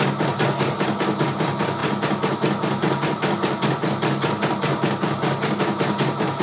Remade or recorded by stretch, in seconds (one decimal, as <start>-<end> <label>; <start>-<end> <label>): 0.0-6.4 recorded